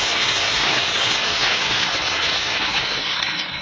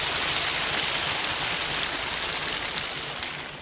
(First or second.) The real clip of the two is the second